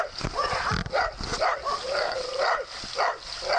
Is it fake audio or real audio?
real